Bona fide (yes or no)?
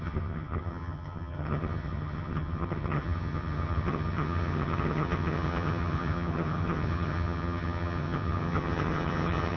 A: no